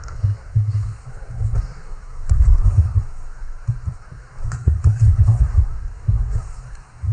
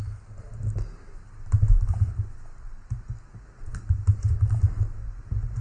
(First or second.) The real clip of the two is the second